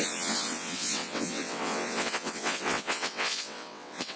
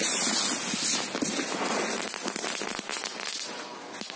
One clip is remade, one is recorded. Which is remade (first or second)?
first